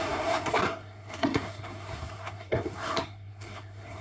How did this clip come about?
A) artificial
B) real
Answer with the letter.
A